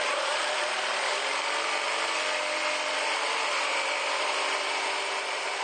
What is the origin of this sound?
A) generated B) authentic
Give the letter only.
B